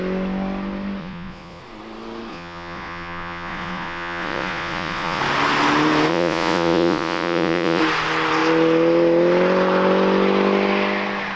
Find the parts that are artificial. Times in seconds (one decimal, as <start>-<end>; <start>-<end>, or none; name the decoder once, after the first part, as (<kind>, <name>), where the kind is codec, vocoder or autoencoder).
1.0-1.6 (vocoder, Vocos); 2.3-5.2; 6.1-7.8